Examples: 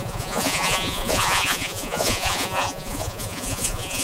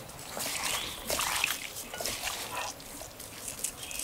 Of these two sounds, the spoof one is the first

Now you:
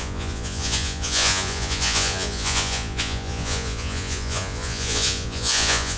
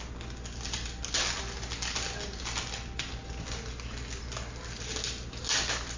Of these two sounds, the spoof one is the first